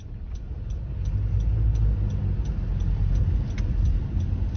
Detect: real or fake real